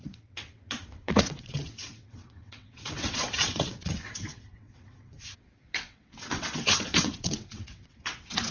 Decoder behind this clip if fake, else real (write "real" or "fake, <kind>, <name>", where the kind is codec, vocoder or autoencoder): fake, vocoder, WaveNeXt